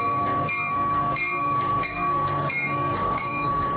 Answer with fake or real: fake